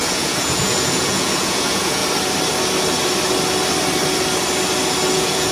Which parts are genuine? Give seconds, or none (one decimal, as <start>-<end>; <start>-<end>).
2.0-5.1